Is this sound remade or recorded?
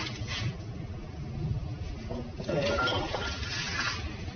recorded